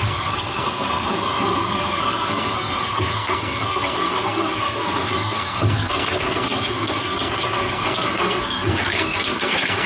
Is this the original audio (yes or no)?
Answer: no